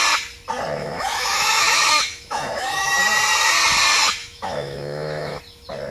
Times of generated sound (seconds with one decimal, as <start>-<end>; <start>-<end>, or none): 0.8-3.0; 4.2-5.4